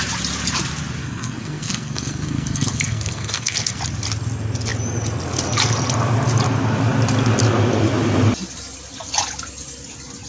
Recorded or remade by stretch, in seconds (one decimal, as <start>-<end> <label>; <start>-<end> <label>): 0.0-1.0 recorded; 1.0-3.8 remade; 3.8-10.3 recorded